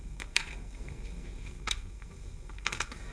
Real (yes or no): no